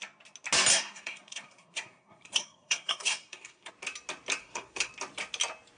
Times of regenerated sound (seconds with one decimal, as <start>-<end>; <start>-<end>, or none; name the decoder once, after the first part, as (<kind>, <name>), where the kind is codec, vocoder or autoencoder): 0.7-3.7 (codec, SNAC); 4.4-4.9